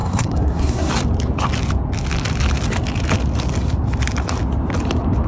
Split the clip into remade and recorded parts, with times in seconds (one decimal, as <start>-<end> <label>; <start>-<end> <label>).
0.0-0.9 remade; 0.9-5.3 recorded